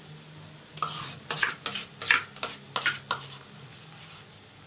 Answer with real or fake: real